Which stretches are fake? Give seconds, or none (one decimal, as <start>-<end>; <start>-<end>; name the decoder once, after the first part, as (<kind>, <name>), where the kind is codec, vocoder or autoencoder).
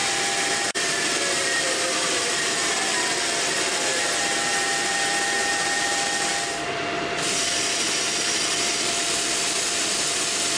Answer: 0.0-10.6 (vocoder, BigVGAN v2)